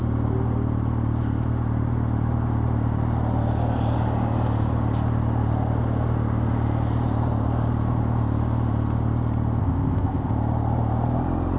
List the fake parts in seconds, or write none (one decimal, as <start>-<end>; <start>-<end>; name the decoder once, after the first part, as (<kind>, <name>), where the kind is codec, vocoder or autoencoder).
9.6-10.3 (codec, ZipCodec)